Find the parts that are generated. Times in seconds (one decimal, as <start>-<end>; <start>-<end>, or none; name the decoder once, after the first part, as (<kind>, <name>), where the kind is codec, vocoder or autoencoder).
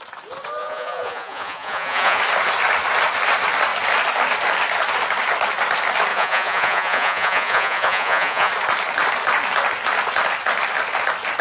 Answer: 0.6-2.2 (vocoder, Vocos); 6.1-8.5